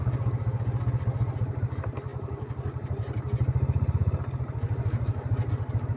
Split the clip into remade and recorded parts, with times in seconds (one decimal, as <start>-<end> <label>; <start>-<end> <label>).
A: 0.0-6.0 recorded